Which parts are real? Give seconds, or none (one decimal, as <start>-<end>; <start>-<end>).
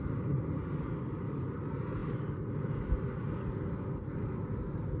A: 0.0-5.0